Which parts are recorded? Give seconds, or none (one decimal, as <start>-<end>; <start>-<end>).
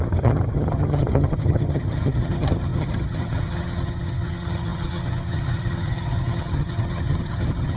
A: none